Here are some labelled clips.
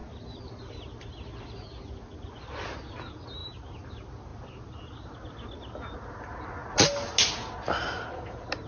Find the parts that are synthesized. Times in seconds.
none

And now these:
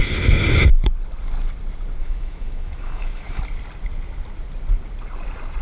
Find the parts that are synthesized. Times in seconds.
2.0-3.4